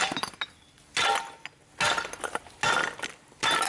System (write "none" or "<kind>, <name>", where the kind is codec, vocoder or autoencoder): none